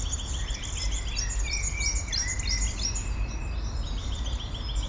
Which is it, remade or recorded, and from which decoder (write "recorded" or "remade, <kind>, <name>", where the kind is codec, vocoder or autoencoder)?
recorded